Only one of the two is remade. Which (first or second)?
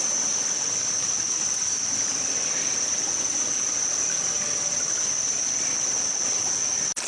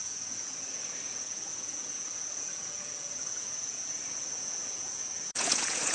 second